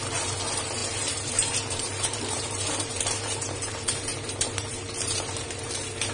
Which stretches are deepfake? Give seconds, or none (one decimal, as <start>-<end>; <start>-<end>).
0.0-6.1